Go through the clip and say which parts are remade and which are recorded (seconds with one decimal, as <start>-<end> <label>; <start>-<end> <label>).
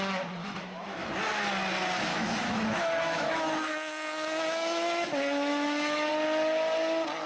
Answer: 0.0-0.4 recorded; 0.4-1.1 remade; 1.1-2.1 recorded; 2.1-6.1 remade; 6.1-7.3 recorded